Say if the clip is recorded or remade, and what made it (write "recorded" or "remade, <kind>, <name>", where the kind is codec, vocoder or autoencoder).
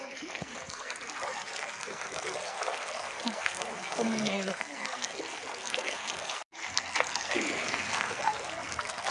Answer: remade, codec, SNAC